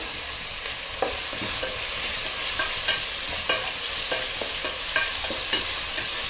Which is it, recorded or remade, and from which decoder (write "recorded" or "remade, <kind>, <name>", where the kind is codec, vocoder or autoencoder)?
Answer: recorded